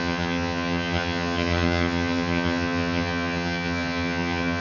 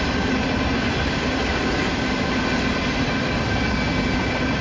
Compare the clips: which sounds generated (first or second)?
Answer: first